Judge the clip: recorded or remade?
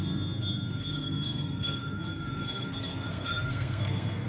remade